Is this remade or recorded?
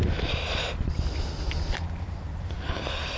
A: recorded